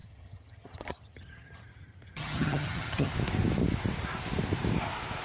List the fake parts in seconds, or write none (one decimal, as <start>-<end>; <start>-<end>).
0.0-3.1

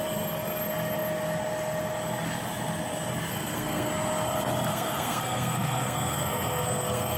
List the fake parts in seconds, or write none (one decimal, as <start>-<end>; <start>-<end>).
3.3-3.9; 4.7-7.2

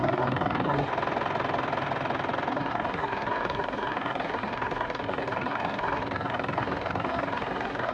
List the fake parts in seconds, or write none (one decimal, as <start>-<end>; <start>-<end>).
0.0-0.9; 2.5-7.9

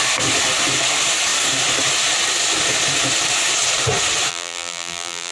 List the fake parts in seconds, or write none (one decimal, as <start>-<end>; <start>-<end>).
4.3-5.3

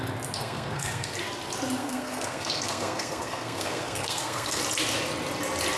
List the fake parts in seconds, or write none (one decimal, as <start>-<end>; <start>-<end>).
0.4-1.1; 1.8-4.6